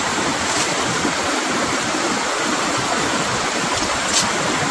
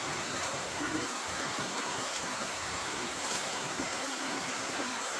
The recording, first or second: first